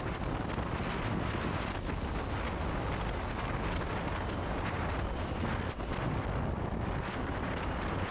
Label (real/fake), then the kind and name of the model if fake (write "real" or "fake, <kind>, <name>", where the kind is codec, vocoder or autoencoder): real